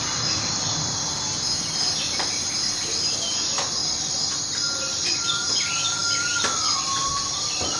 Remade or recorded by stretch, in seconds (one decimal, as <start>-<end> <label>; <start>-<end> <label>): 0.0-3.8 recorded; 3.8-4.3 remade; 4.3-6.0 recorded; 6.0-6.6 remade; 6.6-7.0 recorded; 7.0-7.8 remade